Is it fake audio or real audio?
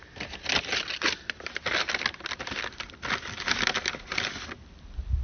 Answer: real